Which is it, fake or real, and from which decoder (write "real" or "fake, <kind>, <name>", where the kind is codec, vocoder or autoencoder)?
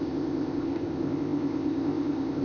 fake, codec, ZipCodec